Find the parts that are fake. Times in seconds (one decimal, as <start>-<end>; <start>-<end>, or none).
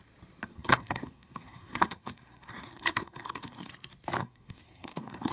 0.5-3.7; 4.2-5.3